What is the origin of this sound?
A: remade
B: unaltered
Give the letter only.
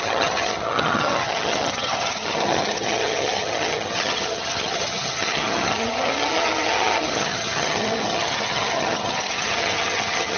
A